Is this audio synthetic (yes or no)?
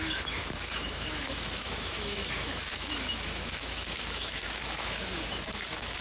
yes